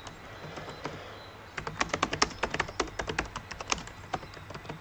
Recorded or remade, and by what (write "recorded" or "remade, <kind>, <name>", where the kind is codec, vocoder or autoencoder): recorded